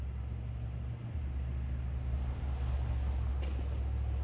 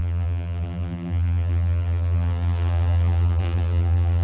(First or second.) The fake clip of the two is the second